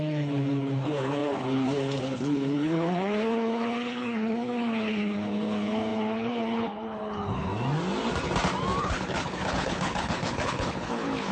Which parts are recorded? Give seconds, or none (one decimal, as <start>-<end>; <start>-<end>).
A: 7.5-8.8